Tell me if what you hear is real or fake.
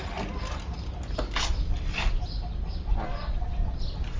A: real